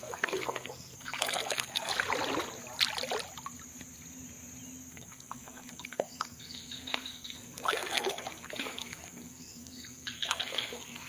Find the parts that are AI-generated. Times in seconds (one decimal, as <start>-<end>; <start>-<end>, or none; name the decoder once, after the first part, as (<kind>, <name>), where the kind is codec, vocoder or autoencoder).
0.0-1.9 (codec, SNAC); 4.9-11.1